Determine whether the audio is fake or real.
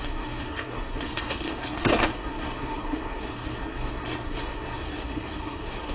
fake